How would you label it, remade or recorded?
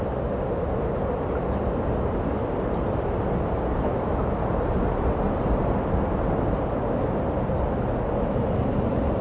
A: recorded